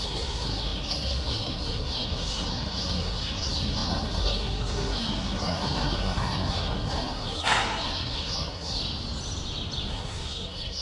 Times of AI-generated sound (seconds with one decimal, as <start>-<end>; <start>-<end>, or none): 0.0-8.8; 9.9-10.8